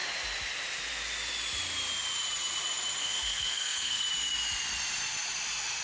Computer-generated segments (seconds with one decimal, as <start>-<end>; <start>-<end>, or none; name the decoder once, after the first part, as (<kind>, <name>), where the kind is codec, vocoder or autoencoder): 3.0-4.0 (codec, SNAC)